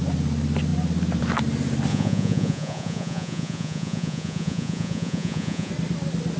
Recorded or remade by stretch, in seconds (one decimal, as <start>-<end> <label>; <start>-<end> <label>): 0.0-1.9 recorded; 1.9-5.7 remade; 5.7-6.4 recorded